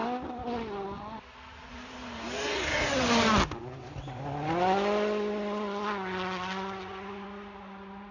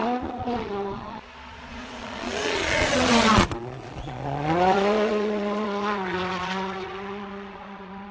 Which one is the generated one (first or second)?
second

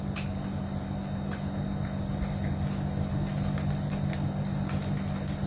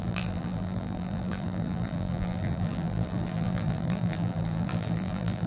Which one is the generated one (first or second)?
second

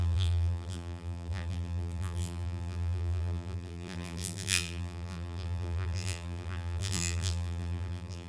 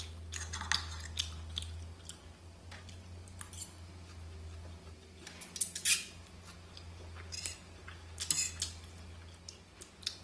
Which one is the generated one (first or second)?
first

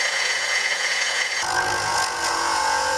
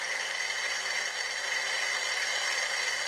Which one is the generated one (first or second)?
first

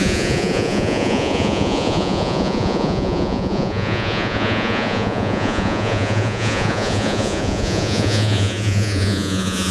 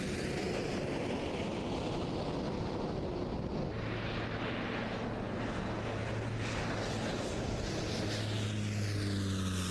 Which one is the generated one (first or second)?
first